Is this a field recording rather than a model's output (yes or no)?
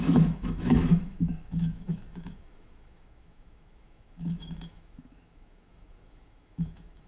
no